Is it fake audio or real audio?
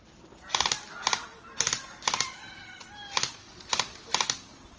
real